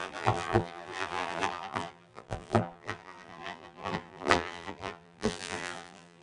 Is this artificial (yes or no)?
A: yes